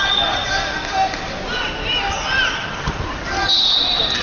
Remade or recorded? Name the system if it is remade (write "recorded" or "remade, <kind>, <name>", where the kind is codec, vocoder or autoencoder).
recorded